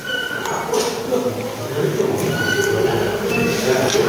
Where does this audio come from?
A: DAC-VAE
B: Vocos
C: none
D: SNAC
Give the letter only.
C